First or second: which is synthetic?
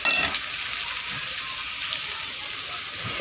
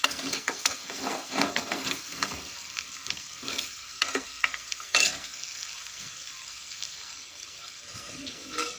second